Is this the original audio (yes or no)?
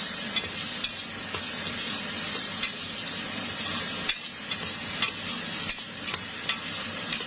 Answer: yes